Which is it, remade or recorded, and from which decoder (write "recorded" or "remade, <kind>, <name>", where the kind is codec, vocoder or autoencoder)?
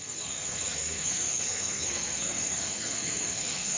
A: remade, codec, SNAC